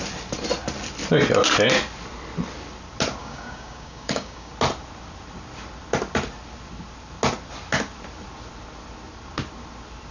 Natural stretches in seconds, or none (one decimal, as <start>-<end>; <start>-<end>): 0.0-3.2; 4.5-10.1